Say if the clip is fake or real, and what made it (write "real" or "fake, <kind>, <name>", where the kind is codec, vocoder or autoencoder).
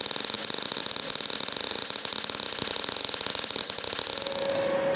real